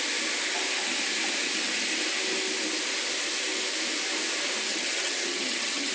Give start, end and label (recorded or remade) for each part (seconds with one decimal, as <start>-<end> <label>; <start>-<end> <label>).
0.0-4.7 recorded; 4.7-5.9 remade

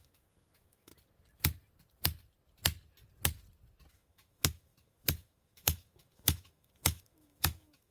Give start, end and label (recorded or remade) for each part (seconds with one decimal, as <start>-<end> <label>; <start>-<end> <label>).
0.0-0.9 remade; 0.9-3.9 recorded; 3.9-7.9 remade

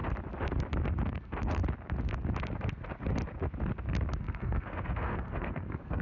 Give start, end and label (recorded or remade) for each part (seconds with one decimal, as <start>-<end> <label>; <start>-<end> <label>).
0.0-1.0 recorded; 1.0-1.6 remade; 1.6-4.2 recorded; 4.2-6.0 remade

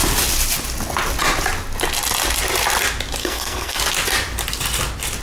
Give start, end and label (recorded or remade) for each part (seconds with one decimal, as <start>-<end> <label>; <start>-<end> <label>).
0.0-3.2 recorded; 3.2-3.8 remade; 3.8-5.2 recorded

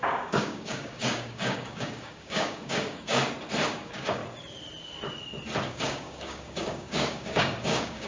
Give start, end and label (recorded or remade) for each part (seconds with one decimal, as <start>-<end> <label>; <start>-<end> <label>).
0.0-3.2 remade; 3.2-3.7 recorded; 3.7-4.2 remade; 4.2-5.7 recorded; 5.7-8.1 remade

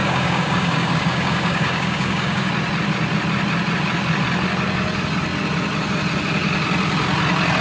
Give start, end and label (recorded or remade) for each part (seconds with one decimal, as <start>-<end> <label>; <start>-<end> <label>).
0.0-2.5 remade; 2.5-7.6 recorded

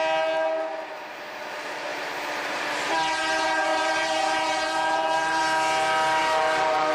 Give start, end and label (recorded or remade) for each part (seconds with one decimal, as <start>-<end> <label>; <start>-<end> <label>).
0.0-1.9 recorded; 1.9-2.6 remade; 2.6-3.7 recorded; 3.7-5.4 remade; 5.4-6.2 recorded; 6.2-6.9 remade

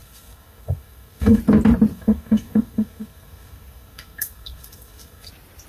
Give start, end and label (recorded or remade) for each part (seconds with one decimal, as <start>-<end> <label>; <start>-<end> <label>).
0.0-1.4 remade; 1.4-1.9 recorded; 1.9-5.3 remade; 5.3-5.7 recorded